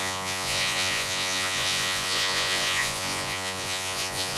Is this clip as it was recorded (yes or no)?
no